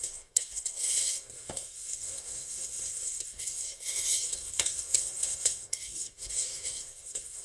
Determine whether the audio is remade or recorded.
remade